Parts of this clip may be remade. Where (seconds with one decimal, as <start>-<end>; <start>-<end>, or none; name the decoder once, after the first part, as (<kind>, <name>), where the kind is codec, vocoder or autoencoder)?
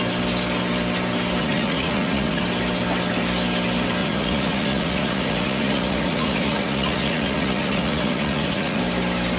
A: 1.4-2.4 (vocoder, Vocos); 4.0-8.8